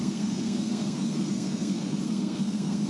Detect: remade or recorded remade